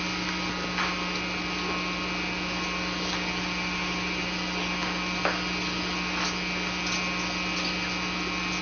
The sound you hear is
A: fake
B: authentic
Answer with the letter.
B